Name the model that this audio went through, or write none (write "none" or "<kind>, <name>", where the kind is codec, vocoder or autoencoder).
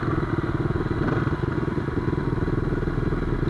none